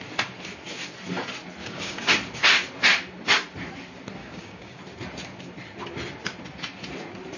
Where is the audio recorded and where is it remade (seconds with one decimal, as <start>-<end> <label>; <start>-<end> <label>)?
0.0-1.6 recorded; 1.6-2.1 remade; 2.1-4.2 recorded; 4.2-4.8 remade; 4.8-7.4 recorded